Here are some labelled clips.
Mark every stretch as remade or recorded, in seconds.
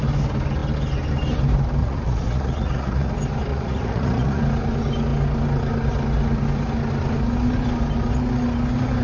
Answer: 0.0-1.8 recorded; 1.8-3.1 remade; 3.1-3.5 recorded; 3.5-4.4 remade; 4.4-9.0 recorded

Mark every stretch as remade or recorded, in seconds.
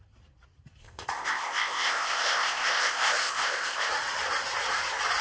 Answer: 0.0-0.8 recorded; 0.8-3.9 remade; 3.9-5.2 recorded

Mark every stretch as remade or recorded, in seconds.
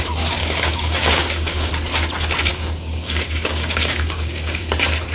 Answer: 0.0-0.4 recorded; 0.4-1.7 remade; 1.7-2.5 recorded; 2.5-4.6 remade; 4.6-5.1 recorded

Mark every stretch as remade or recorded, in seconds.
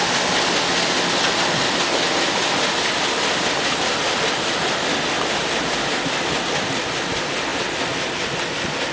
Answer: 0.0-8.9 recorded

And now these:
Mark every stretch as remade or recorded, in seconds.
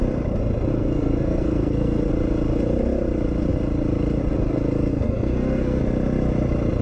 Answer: 0.0-0.7 recorded; 0.7-2.1 remade; 2.1-4.9 recorded; 4.9-5.8 remade; 5.8-6.8 recorded